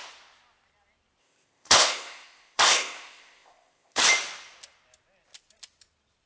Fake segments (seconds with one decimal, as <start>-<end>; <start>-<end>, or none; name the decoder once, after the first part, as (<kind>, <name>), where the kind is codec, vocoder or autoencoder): 1.2-4.0 (codec, ZipCodec)